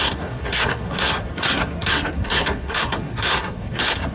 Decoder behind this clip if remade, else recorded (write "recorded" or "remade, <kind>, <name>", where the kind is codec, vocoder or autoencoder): remade, codec, SNAC